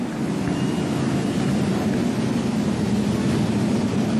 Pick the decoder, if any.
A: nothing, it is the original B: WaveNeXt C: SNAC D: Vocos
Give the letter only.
A